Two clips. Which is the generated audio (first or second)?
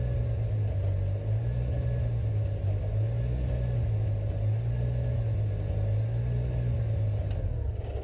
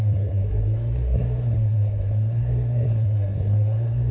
second